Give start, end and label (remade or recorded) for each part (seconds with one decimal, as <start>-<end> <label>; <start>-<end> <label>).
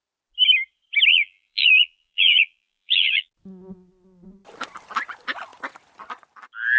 0.0-1.1 recorded; 1.1-3.3 remade; 3.3-6.8 recorded